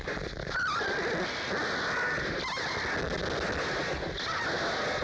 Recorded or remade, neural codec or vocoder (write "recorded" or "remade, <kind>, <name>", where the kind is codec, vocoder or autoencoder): recorded